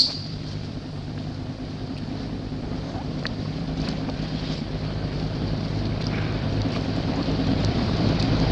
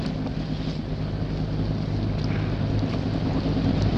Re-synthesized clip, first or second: first